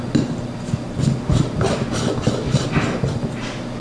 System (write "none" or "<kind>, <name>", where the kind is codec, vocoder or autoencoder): none